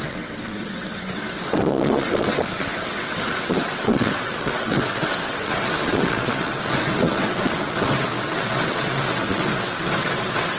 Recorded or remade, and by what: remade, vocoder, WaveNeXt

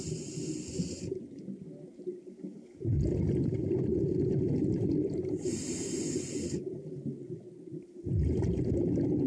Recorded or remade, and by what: recorded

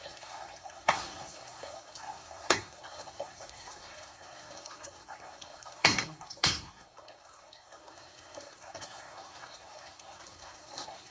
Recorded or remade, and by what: remade, codec, SNAC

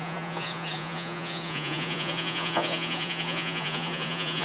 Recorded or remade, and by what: remade, vocoder, Vocos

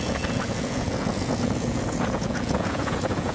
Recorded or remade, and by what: remade, vocoder, Vocos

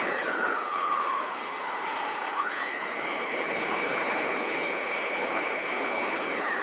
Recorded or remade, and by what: remade, codec, HILCodec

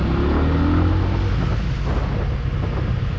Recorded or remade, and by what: recorded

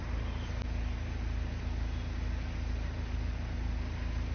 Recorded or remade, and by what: recorded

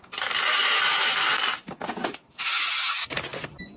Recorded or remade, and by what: recorded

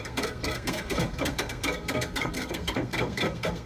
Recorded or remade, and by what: remade, codec, SNAC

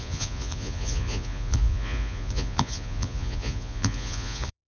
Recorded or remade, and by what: remade, vocoder, Vocos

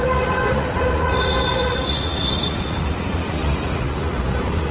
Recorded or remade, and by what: remade, vocoder, Vocos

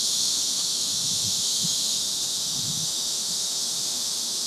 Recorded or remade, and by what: remade, autoencoder, DAC-VAE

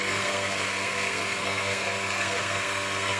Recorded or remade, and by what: remade, codec, SNAC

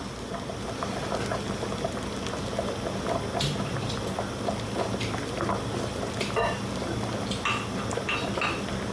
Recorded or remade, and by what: recorded